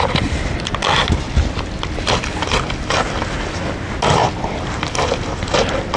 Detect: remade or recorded recorded